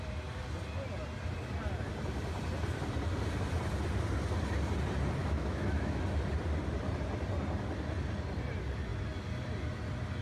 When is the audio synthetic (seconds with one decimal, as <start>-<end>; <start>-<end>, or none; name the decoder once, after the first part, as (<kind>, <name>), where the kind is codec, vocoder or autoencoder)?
5.2-6.0 (autoencoder, DAC-VAE)